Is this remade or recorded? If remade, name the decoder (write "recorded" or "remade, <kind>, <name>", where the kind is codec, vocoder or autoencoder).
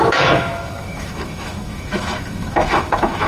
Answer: remade, autoencoder, DAC-VAE